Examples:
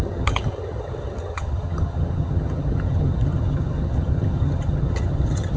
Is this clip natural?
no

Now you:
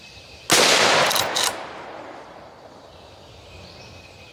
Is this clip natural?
yes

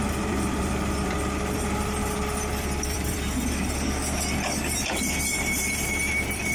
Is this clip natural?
no